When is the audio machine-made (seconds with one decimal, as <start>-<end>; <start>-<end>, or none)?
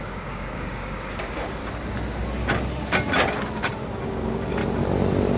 0.0-1.6; 4.0-4.6